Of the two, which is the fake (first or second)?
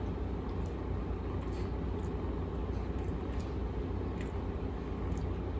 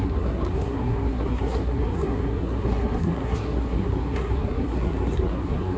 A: second